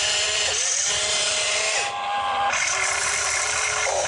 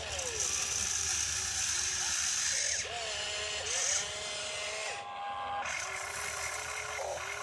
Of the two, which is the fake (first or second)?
first